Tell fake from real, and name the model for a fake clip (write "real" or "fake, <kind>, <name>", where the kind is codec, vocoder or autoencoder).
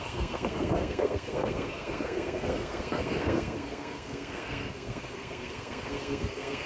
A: fake, codec, SNAC